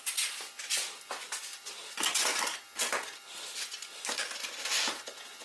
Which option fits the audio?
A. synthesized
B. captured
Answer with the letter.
B